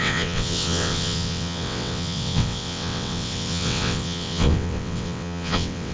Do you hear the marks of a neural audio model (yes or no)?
yes